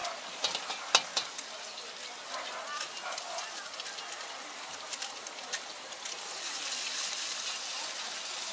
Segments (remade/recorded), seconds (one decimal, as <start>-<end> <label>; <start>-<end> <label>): 0.0-0.7 remade; 0.7-8.5 recorded